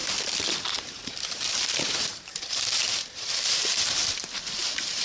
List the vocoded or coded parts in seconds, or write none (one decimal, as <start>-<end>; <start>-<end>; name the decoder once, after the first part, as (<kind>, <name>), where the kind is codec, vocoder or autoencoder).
0.0-3.6 (vocoder, BigVGAN v2); 4.6-5.0